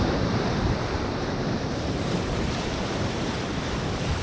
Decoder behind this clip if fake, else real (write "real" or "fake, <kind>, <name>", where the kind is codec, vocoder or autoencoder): fake, vocoder, BigVGAN v2